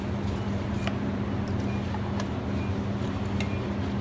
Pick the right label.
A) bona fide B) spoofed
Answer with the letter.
A